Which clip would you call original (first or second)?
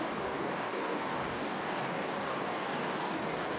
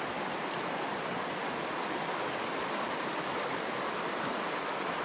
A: second